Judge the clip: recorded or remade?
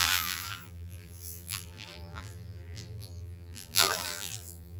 remade